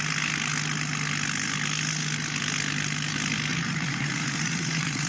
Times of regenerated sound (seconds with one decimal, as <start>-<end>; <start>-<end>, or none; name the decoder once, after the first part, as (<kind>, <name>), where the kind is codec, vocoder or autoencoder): 3.5-5.1 (vocoder, Vocos)